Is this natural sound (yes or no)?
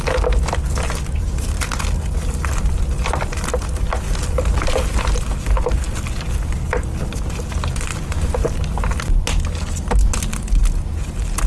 yes